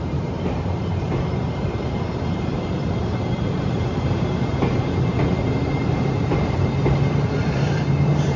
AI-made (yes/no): yes